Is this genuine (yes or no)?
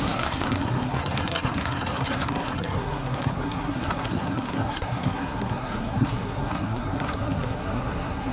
no